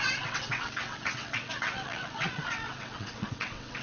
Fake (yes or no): yes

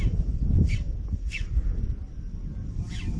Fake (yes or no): no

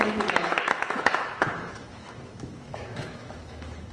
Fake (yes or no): yes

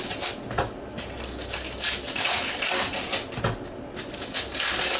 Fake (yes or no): no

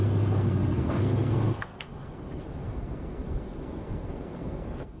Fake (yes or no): yes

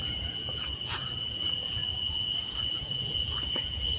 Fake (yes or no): yes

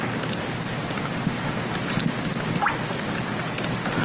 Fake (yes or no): no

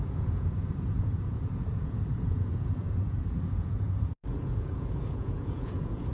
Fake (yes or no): yes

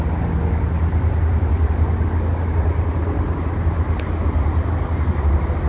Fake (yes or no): no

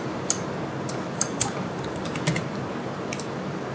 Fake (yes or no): no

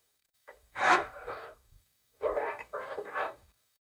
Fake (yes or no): yes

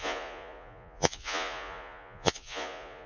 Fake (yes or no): yes